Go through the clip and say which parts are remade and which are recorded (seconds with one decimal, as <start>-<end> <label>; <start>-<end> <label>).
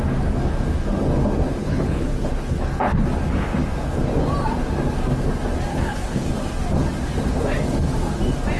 0.0-1.6 recorded; 1.6-3.0 remade; 3.0-5.7 recorded; 5.7-6.3 remade; 6.3-8.6 recorded